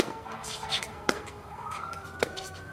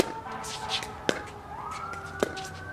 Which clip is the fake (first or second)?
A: first